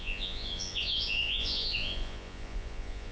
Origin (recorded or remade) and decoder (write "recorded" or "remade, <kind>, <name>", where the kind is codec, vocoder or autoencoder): remade, vocoder, Vocos